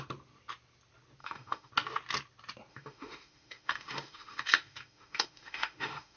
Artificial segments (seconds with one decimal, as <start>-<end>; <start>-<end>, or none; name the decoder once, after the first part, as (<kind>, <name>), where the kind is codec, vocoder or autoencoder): 1.2-1.7 (autoencoder, DAC-VAE); 2.7-6.2